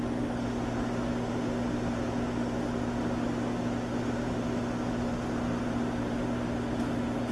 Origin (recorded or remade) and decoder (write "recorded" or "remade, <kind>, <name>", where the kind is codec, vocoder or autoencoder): recorded